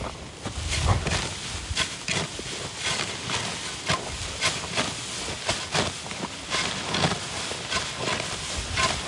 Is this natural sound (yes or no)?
yes